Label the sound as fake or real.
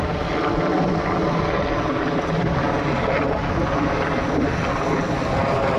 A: real